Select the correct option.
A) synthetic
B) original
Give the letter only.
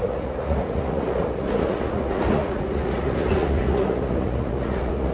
A